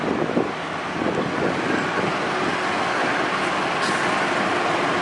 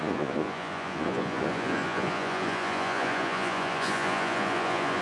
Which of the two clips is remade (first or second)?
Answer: second